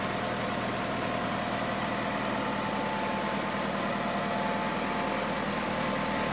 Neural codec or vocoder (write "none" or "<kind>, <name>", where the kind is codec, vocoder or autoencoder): none